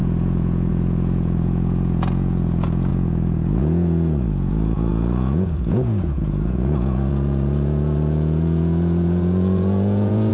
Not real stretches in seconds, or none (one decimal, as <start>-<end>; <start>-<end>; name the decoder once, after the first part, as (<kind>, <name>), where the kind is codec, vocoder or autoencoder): 0.0-10.3 (vocoder, Vocos)